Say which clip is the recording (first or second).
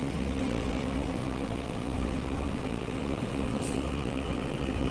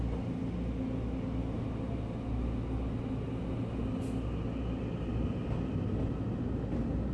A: second